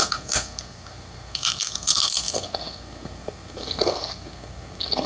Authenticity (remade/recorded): remade